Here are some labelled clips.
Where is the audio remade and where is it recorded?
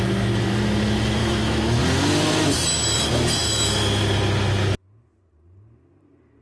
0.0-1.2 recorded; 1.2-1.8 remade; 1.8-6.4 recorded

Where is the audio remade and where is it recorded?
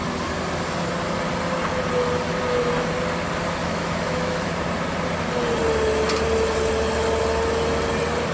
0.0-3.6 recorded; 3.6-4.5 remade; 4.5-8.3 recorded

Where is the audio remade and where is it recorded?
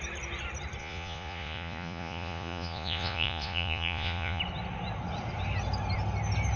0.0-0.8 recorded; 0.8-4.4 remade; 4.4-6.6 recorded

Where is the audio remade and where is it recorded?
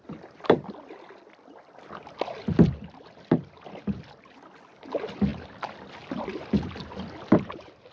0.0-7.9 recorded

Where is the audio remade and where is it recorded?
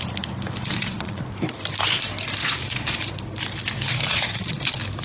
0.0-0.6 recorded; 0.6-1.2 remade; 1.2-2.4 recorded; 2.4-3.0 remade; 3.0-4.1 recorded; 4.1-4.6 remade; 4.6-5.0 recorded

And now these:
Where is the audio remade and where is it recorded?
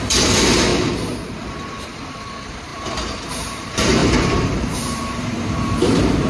0.0-0.7 remade; 0.7-2.1 recorded; 2.1-6.3 remade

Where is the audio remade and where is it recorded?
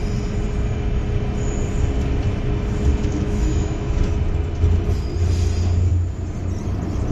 0.0-3.0 recorded; 3.0-4.0 remade; 4.0-7.1 recorded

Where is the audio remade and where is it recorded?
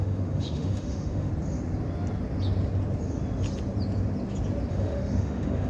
0.0-1.3 remade; 1.3-4.7 recorded; 4.7-5.7 remade